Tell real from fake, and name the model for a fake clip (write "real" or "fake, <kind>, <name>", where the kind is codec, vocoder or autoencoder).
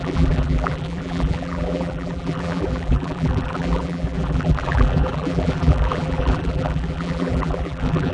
fake, vocoder, BigVGAN v2